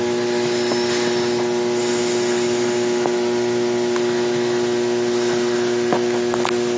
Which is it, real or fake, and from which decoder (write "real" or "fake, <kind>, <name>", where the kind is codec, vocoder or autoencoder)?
real